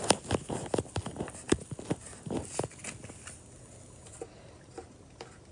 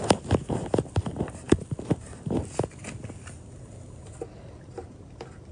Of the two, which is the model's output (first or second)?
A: second